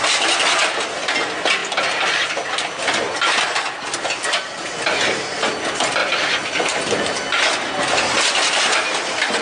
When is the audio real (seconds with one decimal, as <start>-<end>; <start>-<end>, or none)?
0.0-1.6; 2.3-6.0; 6.6-9.4